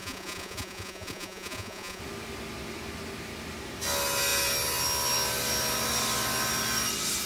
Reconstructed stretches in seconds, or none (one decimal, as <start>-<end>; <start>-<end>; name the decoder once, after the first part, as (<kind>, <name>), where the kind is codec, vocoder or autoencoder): 0.0-2.0 (vocoder, Vocos)